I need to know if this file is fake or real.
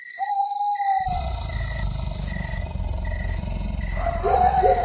real